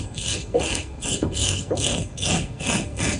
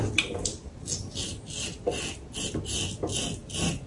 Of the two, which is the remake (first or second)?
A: first